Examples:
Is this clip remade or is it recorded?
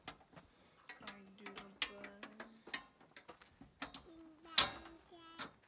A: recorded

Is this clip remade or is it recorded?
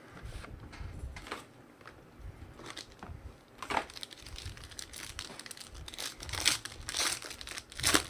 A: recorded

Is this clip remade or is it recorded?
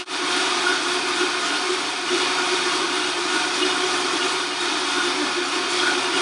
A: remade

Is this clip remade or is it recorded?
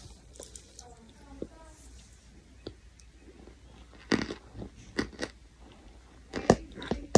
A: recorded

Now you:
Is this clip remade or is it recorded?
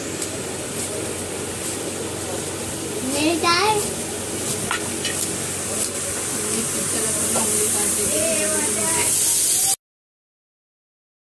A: recorded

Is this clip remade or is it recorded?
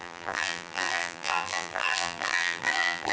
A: remade